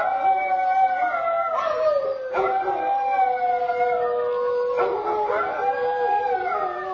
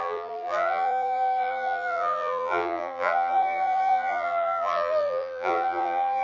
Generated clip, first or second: second